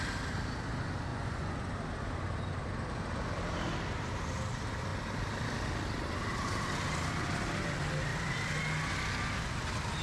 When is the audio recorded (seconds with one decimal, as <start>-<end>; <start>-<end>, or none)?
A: 0.0-1.1; 1.7-10.0